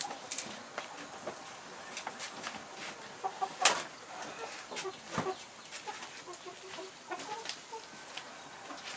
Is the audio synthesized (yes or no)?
no